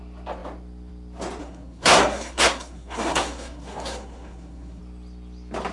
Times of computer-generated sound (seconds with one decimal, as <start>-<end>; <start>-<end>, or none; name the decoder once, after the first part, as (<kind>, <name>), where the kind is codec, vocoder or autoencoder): 1.4-4.8 (codec, SNAC)